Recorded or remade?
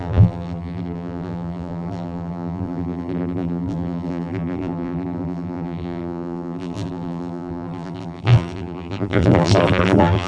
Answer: remade